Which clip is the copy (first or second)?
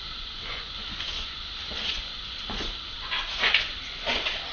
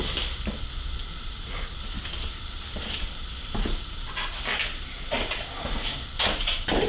first